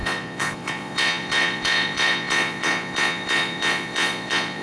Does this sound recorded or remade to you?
remade